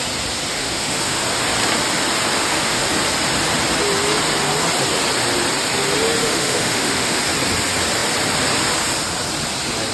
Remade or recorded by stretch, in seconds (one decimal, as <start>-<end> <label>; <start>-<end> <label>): 0.0-0.5 recorded; 0.5-1.2 remade; 1.2-2.4 recorded; 2.4-2.9 remade; 2.9-6.2 recorded; 6.2-7.2 remade; 7.2-9.9 recorded